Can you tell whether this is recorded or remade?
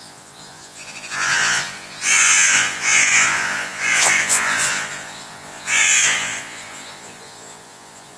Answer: remade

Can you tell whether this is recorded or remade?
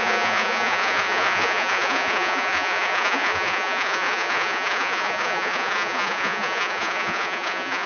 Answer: remade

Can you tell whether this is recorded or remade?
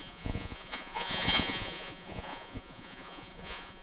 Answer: remade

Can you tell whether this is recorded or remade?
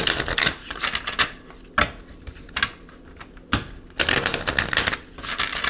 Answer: recorded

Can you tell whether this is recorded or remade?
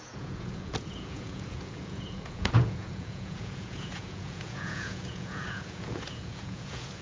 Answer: remade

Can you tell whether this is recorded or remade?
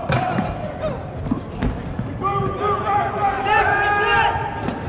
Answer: recorded